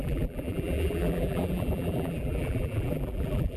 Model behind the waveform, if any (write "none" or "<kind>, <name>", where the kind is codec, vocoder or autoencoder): vocoder, BigVGAN v2